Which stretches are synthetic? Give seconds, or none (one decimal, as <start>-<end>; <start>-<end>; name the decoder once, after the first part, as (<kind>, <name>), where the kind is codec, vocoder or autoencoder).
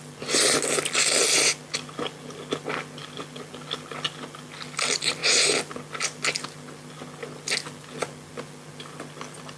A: none